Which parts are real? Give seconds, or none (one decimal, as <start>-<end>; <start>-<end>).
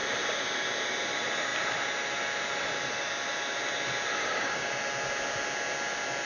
0.0-4.2; 4.7-6.3